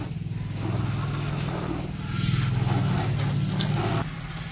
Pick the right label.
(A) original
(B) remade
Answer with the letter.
A